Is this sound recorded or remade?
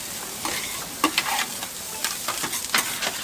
recorded